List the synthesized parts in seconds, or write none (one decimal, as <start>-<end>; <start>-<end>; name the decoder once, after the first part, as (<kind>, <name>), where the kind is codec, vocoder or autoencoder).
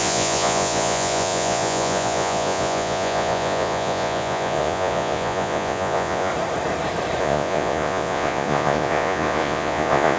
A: 0.0-6.3 (vocoder, Vocos); 7.2-10.2